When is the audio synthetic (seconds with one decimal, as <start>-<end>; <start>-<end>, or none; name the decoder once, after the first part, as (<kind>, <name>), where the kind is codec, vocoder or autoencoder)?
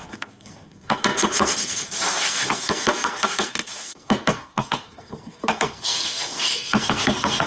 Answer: 0.0-7.5 (codec, SNAC)